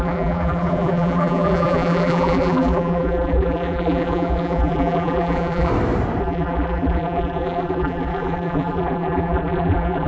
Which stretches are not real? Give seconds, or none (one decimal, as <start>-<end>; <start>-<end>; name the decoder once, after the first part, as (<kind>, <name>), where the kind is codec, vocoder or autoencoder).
0.0-5.7 (vocoder, BigVGAN v2); 6.2-10.1